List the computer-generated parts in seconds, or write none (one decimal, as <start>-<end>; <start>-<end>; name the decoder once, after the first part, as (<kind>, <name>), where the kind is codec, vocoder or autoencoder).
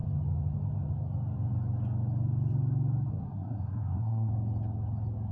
3.1-4.3 (codec, SNAC)